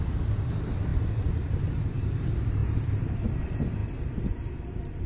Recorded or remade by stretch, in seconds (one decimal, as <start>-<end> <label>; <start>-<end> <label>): 0.0-2.6 remade; 2.6-3.4 recorded; 3.4-5.1 remade